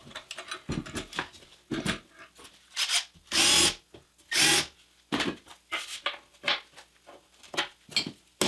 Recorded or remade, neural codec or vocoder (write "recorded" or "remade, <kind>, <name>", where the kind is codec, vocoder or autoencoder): recorded